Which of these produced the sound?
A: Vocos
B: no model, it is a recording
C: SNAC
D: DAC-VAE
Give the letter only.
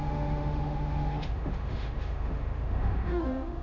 D